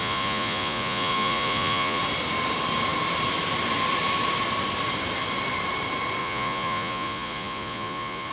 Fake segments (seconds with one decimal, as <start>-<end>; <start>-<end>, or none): 0.0-2.0; 6.2-8.3